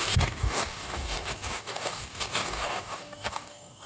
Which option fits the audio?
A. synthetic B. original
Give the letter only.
A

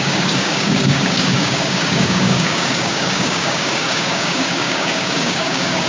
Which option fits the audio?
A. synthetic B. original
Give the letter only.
A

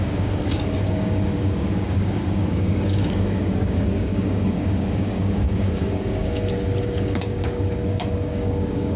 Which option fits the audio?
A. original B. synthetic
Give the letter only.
B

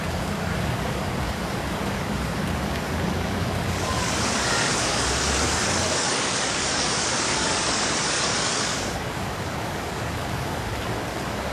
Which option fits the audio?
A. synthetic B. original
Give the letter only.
A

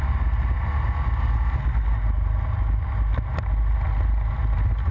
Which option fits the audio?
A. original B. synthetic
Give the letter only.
A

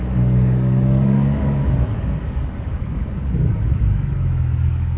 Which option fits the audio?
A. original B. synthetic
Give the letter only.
B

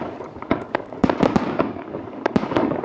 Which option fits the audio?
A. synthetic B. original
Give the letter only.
A